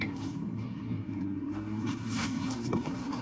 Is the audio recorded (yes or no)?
no